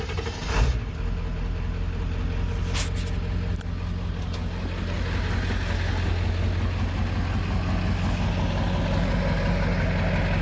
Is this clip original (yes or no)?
yes